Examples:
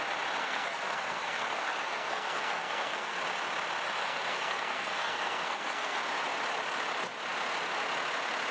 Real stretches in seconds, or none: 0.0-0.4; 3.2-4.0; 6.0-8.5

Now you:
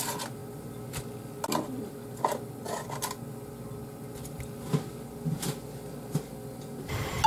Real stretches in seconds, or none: 0.0-7.3

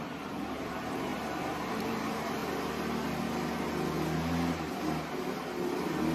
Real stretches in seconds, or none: 1.1-1.7; 2.4-6.1

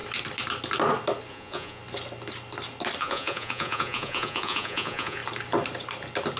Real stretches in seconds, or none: 0.0-1.3; 1.8-3.0; 5.2-6.4

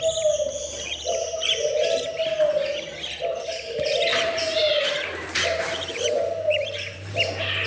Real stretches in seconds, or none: 0.0-0.6; 2.2-4.1; 7.2-7.7

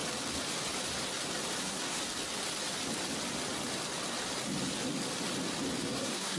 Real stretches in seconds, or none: 0.0-1.6; 2.0-5.8

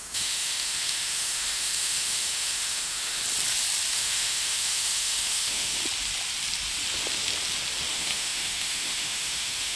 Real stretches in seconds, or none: 3.2-3.9; 5.8-7.9

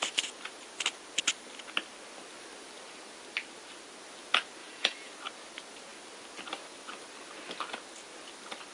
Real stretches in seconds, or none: 0.0-4.6; 5.1-8.7